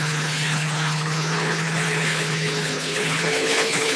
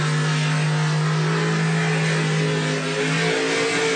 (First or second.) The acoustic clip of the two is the second